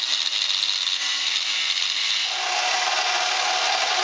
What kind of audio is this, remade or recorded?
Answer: recorded